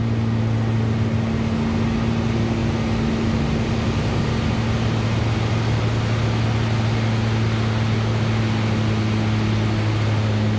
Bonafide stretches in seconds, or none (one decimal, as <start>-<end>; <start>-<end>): 0.0-10.6